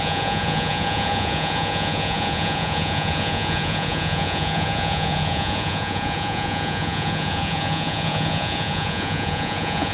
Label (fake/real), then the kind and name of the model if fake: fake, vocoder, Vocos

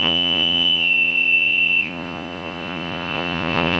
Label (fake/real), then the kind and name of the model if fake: fake, vocoder, Vocos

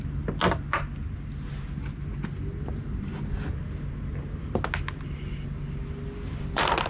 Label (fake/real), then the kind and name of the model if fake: real